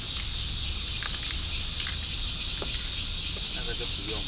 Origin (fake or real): real